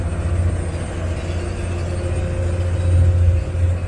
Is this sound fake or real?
real